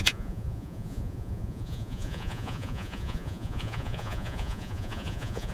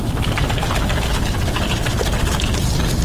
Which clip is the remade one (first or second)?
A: first